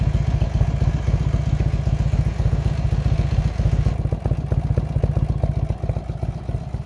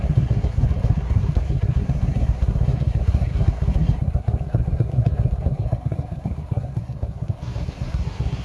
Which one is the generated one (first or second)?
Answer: second